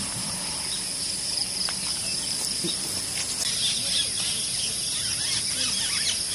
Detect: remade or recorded recorded